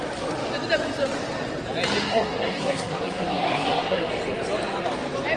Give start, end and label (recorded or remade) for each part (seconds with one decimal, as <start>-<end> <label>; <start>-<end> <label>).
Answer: 0.0-2.0 recorded; 2.0-4.1 remade; 4.1-5.4 recorded